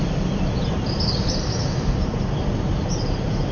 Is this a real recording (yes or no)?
yes